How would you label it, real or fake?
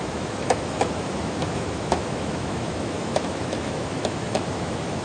fake